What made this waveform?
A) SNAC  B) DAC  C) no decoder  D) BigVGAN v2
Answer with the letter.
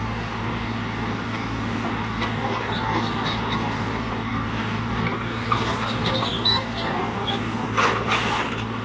B